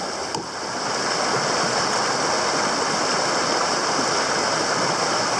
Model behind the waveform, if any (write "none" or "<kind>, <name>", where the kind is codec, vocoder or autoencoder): none